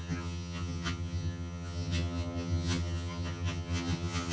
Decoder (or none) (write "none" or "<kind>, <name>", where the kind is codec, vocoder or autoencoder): vocoder, HiFi-GAN